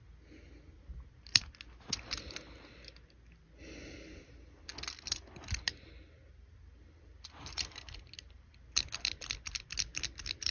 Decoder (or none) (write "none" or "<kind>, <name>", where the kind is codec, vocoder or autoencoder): none